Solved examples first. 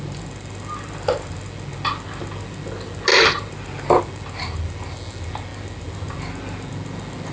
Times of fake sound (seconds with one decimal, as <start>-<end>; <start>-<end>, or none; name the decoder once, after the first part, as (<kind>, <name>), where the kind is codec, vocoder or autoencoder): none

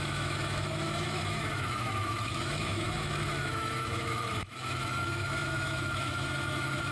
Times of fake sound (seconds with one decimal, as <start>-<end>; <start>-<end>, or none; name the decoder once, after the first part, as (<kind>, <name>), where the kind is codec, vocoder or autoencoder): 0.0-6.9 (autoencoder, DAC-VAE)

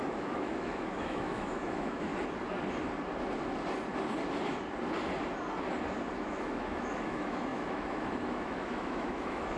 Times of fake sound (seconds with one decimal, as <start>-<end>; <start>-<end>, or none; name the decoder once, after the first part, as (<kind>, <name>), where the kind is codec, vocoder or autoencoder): 0.0-2.1 (autoencoder, DAC-VAE); 6.1-9.6